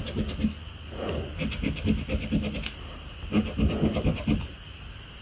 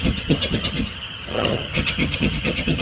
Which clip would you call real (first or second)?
first